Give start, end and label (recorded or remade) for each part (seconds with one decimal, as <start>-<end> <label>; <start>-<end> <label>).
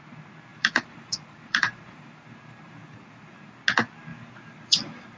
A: 0.0-0.5 recorded; 0.5-3.6 remade; 3.6-4.1 recorded; 4.1-5.2 remade